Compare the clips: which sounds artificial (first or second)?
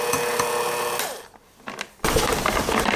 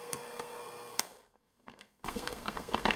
second